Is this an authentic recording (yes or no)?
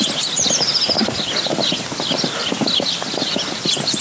yes